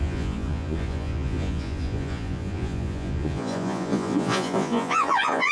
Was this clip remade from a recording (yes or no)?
yes